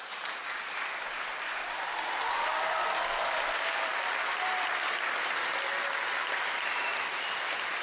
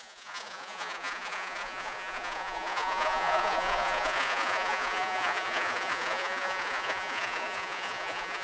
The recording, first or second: first